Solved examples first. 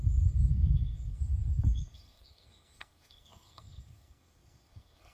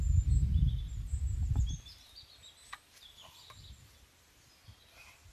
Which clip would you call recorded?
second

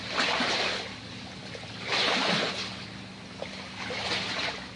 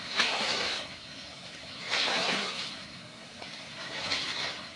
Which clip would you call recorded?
first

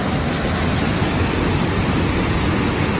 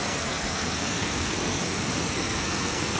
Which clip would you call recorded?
first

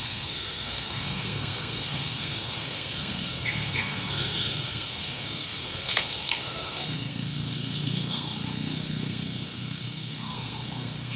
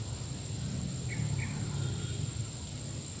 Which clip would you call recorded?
second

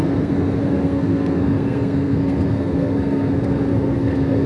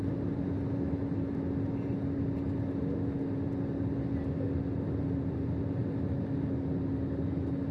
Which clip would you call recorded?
second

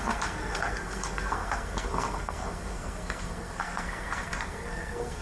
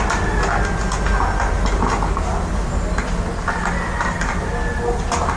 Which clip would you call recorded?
second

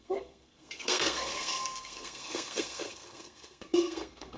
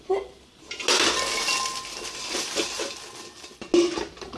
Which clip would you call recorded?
second